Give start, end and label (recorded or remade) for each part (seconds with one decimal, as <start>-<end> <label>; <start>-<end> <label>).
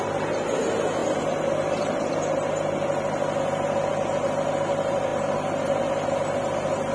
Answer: 0.0-6.9 recorded